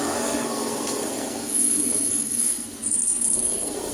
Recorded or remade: remade